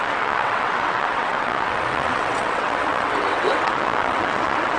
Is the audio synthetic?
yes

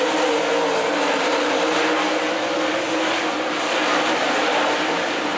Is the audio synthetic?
no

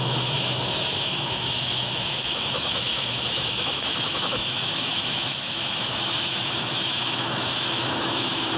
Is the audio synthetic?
yes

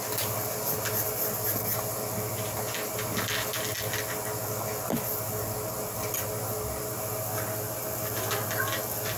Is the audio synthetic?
no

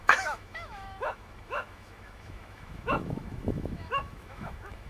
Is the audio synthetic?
yes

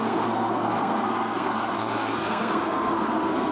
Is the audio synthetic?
yes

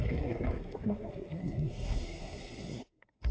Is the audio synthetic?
yes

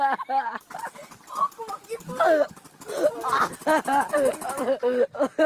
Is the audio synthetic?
no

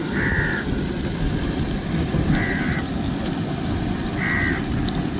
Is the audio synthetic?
no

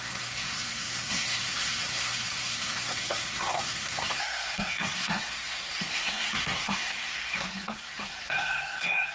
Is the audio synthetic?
yes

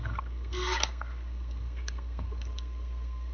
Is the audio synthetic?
yes